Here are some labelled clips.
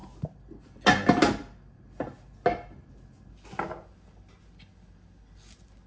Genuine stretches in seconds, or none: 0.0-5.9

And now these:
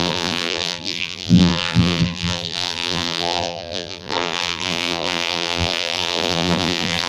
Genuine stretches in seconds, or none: none